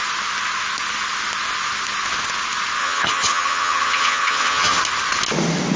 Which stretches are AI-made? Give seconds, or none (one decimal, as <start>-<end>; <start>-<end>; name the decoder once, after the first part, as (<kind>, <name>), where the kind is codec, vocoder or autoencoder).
2.8-4.8 (vocoder, HiFi-GAN)